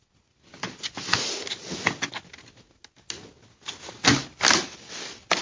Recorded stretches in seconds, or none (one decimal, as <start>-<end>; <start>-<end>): 0.0-5.4

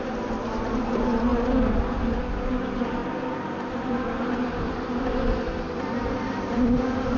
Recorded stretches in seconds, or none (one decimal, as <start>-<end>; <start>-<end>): 0.0-7.2

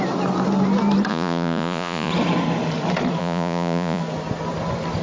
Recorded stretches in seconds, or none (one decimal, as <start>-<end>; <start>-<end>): 0.0-1.1; 2.1-3.2; 4.0-5.0

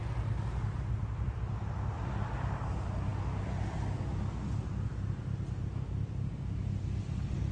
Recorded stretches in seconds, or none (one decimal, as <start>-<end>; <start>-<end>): 0.0-7.5

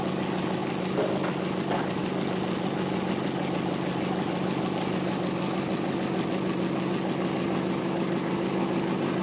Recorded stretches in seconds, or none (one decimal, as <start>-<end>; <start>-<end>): 0.0-9.2

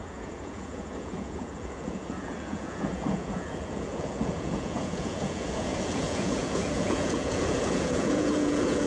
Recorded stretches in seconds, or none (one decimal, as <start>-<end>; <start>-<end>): none